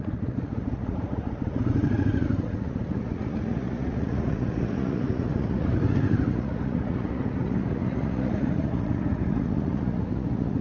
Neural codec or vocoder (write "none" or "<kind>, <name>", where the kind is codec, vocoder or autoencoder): vocoder, Vocos